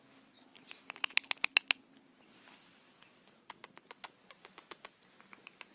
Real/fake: real